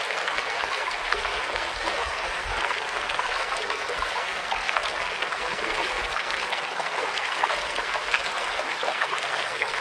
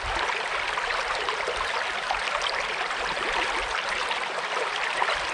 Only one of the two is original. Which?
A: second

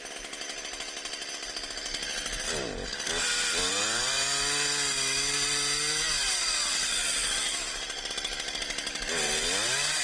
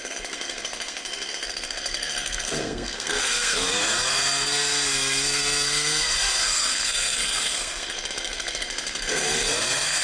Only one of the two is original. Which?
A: first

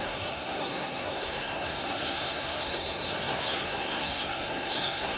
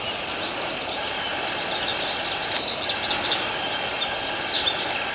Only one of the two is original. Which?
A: second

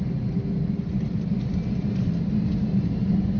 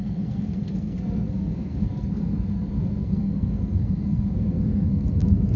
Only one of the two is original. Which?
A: first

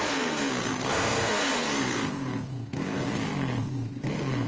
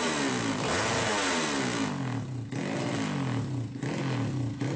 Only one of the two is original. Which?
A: second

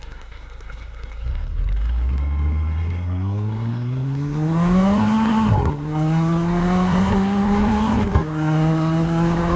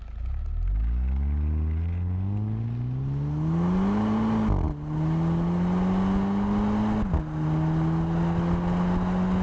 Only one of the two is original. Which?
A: second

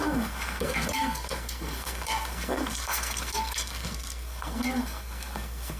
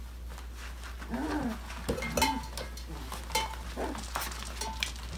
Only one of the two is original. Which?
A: second